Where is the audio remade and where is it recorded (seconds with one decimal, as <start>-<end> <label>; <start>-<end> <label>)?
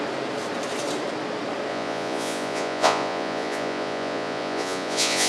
0.0-1.7 recorded; 1.7-5.3 remade